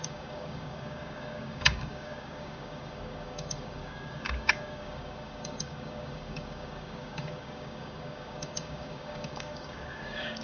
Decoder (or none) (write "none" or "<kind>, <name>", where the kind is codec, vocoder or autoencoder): codec, DAC